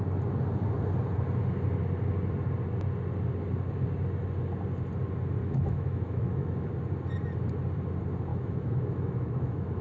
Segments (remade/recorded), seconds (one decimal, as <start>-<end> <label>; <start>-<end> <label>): 0.0-5.4 recorded; 5.4-6.7 remade; 6.7-8.3 recorded; 8.3-9.8 remade